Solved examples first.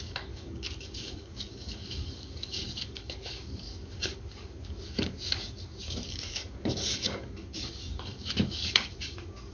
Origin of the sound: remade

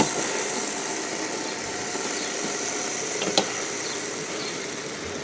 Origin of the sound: recorded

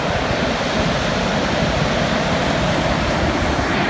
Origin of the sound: recorded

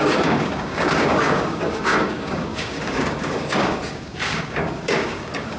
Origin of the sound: remade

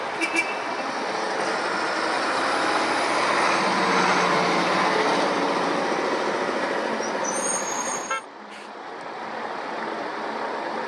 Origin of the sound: recorded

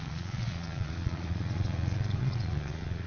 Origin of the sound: remade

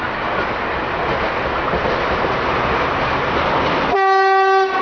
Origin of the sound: recorded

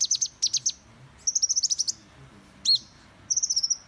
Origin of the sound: recorded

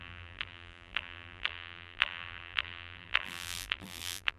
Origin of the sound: remade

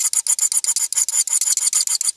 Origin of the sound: recorded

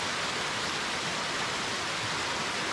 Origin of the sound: recorded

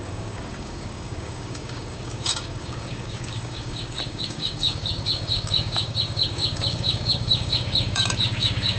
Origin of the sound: remade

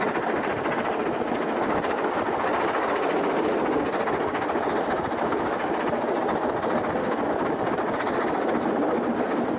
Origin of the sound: recorded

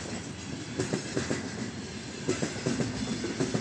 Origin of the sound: recorded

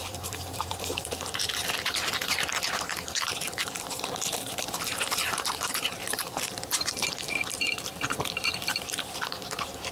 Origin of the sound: remade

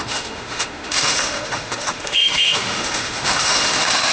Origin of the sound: remade